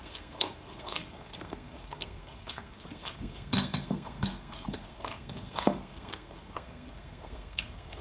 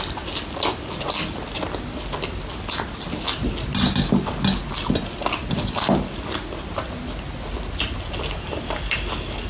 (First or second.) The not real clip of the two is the first